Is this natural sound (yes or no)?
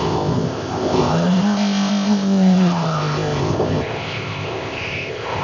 no